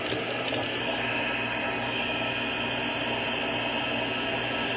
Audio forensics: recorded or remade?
recorded